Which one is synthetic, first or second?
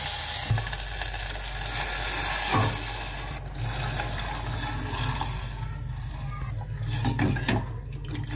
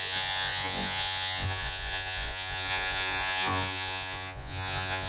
second